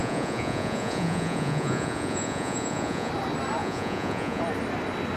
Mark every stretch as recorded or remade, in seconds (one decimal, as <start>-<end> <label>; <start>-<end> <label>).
0.0-3.1 remade; 3.1-3.6 recorded; 3.6-4.4 remade; 4.4-5.2 recorded